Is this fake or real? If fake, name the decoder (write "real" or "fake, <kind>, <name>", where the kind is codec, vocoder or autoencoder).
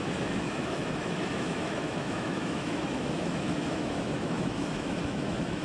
fake, autoencoder, DAC-VAE